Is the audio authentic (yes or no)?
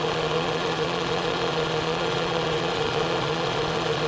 no